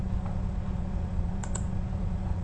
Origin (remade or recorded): remade